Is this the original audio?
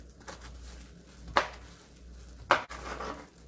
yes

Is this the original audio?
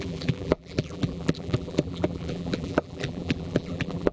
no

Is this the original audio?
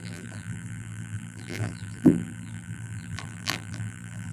no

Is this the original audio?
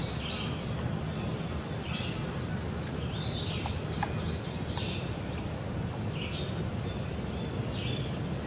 yes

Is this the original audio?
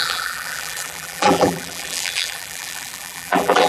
no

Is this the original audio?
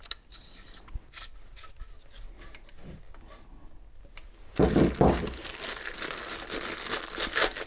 yes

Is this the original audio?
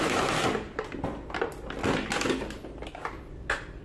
yes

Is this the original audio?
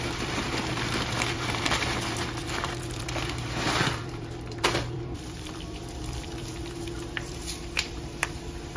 no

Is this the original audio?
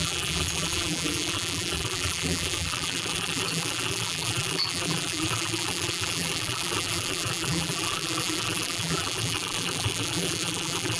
no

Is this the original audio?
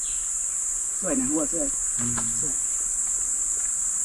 yes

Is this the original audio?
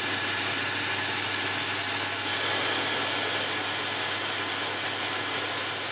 yes